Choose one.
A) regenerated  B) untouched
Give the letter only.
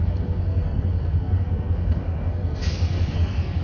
A